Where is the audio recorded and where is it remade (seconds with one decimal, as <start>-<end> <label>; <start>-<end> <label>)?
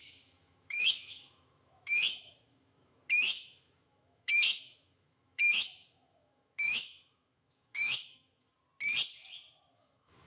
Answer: 0.0-8.5 remade; 8.5-9.7 recorded; 9.7-10.3 remade